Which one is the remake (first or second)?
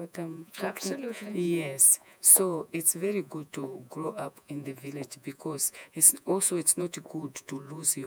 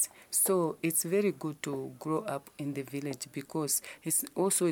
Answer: first